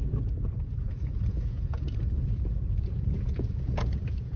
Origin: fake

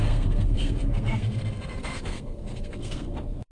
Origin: fake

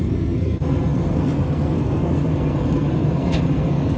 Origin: fake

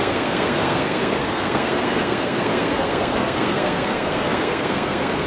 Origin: fake